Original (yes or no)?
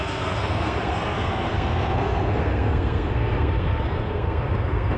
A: no